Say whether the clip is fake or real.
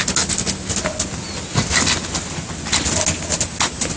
real